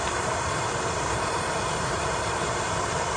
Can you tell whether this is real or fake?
fake